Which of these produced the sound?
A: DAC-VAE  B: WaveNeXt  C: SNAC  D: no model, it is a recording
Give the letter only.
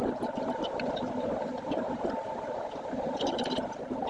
D